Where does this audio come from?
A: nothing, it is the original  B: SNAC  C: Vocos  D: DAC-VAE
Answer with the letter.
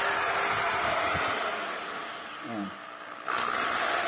A